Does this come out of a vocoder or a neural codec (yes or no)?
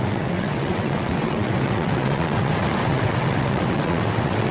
yes